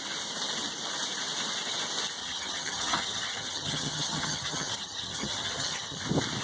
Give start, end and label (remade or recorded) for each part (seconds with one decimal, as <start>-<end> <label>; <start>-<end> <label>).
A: 0.0-2.2 recorded; 2.2-6.0 remade; 6.0-6.4 recorded